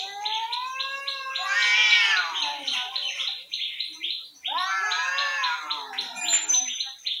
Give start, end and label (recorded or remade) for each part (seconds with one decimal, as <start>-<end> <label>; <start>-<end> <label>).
0.0-1.8 recorded; 1.8-2.4 remade; 2.4-2.8 recorded; 2.8-5.7 remade; 5.7-7.2 recorded